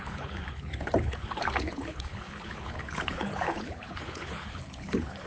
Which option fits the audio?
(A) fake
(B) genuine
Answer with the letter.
A